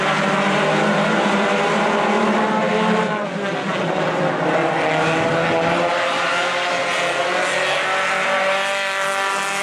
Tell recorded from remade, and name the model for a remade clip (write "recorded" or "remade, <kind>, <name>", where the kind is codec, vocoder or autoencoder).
recorded